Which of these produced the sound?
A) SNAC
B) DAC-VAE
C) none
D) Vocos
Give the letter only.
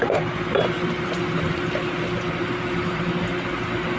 C